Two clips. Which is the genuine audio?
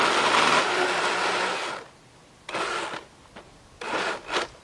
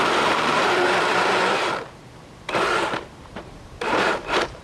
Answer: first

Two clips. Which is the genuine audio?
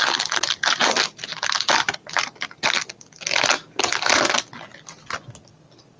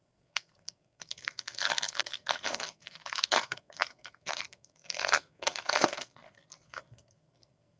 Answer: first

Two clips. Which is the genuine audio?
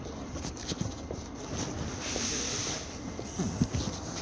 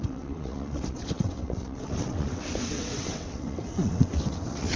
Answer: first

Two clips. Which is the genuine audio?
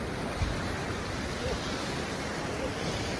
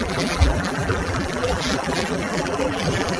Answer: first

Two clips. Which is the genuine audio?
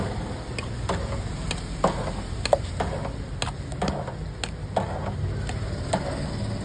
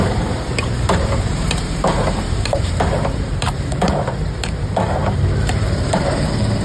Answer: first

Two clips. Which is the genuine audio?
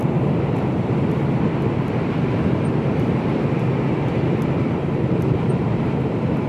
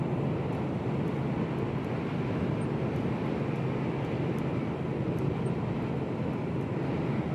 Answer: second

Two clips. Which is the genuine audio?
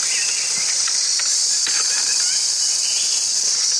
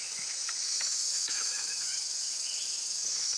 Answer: first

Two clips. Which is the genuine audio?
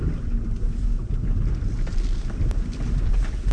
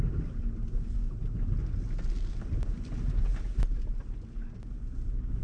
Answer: second